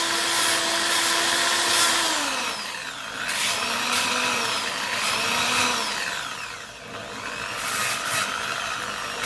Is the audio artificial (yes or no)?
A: no